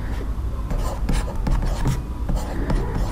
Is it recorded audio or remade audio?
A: recorded